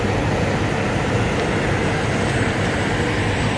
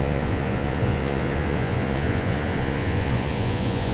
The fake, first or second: second